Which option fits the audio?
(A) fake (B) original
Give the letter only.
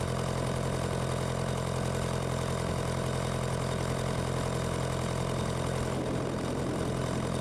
B